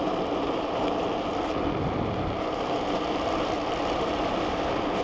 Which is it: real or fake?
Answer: real